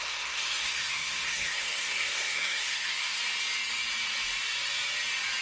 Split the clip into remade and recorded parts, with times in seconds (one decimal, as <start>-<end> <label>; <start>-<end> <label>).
0.0-3.2 remade; 3.2-5.4 recorded